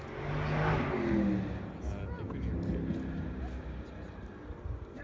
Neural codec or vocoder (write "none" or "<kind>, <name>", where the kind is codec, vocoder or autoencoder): none